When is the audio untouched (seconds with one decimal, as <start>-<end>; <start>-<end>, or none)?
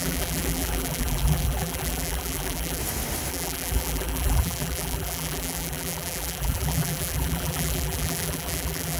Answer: 2.8-3.3